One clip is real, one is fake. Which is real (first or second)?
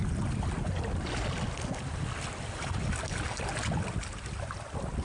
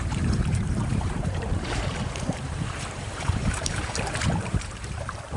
first